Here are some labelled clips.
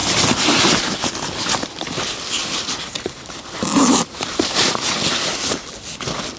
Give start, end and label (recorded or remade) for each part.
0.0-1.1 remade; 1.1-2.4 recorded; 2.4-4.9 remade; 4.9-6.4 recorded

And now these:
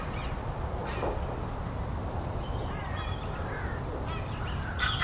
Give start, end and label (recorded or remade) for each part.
0.0-5.0 recorded